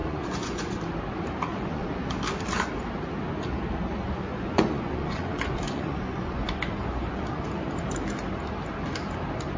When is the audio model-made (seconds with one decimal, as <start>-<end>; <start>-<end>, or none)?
0.0-0.8; 1.5-2.1; 4.0-7.4